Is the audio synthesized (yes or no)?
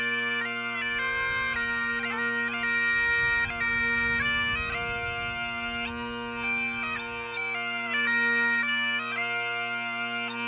no